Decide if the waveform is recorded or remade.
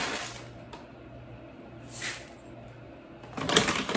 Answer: recorded